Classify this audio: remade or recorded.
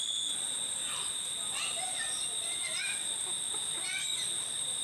recorded